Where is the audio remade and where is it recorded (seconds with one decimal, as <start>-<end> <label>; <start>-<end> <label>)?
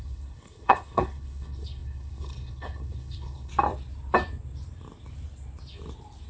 0.0-3.5 remade; 3.5-6.3 recorded